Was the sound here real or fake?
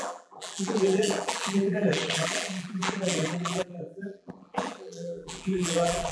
fake